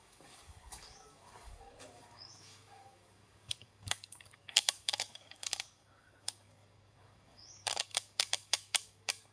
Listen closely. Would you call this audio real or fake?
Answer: fake